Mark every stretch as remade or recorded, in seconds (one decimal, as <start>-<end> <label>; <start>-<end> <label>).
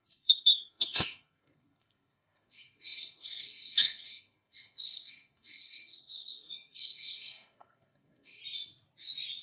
0.0-8.4 remade; 8.4-9.4 recorded